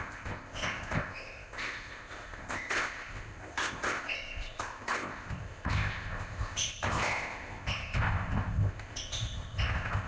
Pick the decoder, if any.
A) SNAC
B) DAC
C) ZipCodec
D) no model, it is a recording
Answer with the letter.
C